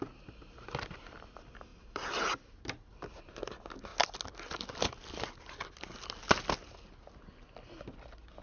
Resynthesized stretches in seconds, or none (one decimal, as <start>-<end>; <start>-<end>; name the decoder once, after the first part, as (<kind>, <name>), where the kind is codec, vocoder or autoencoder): 1.7-2.9 (vocoder, BigVGAN v2)